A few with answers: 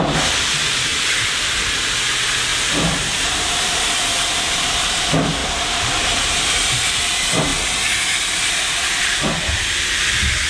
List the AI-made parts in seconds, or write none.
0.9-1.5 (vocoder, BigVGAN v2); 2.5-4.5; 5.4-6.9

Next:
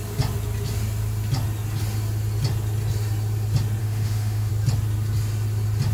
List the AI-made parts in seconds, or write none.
3.8-4.5 (autoencoder, DAC-VAE)

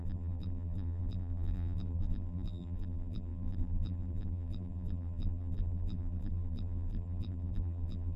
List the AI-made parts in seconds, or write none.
0.0-8.2 (vocoder, BigVGAN v2)

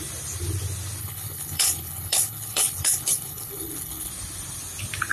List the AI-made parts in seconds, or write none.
1.0-4.1 (codec, HILCodec)

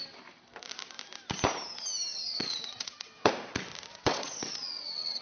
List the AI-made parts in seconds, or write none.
2.1-3.3 (vocoder, WaveNeXt); 3.9-5.2